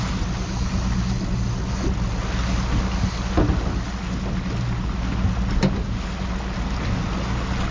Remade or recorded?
recorded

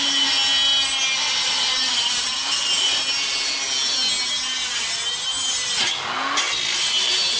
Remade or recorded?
recorded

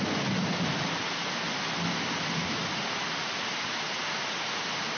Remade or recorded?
recorded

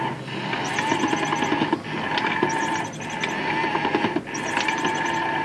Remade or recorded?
recorded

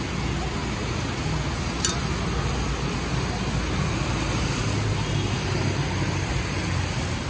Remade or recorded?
recorded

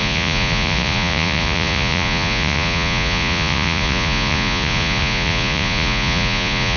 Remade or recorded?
remade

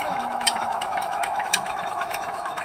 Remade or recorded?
remade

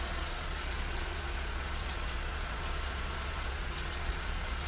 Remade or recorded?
remade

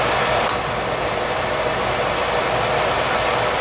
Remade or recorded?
recorded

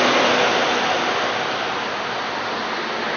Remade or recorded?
recorded